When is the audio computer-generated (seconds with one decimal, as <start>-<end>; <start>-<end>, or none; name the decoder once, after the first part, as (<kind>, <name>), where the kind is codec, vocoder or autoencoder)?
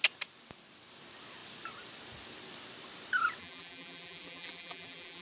3.4-5.2 (vocoder, BigVGAN v2)